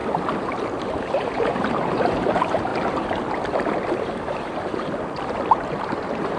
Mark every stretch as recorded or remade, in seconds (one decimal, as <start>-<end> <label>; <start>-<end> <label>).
0.0-0.8 recorded; 0.8-2.7 remade; 2.7-5.2 recorded; 5.2-6.4 remade